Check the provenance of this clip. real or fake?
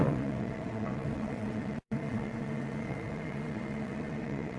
fake